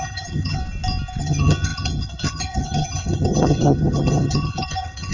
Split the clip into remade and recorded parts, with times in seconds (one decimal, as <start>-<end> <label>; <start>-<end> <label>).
0.0-0.6 remade; 0.6-1.2 recorded; 1.2-5.1 remade